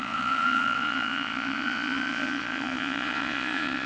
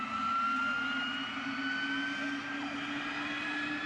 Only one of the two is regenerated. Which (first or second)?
first